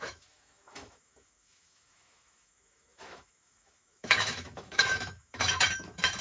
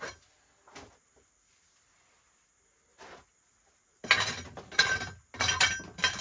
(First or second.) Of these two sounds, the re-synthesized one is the first